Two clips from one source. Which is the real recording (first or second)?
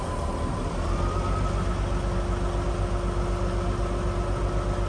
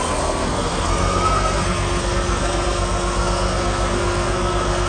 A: first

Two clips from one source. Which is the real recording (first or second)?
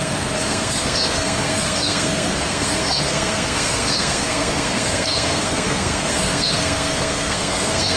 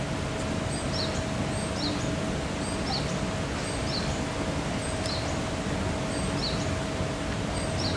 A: second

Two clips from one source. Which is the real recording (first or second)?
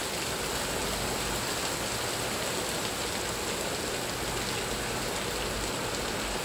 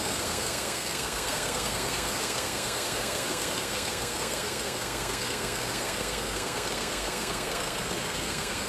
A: first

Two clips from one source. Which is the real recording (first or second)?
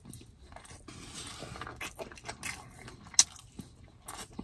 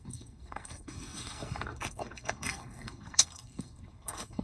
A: first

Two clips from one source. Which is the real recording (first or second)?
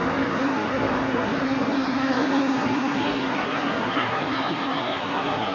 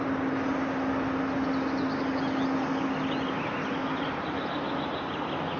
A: second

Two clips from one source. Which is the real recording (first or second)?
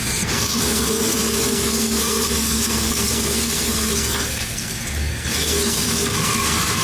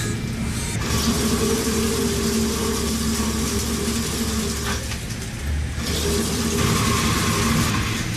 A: second